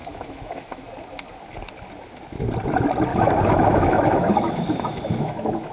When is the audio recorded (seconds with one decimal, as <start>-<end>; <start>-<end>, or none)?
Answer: 0.8-3.1